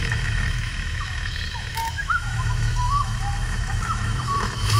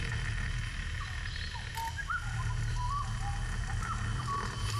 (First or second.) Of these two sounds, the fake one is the first